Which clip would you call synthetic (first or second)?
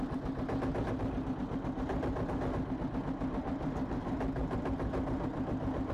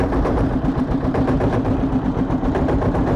second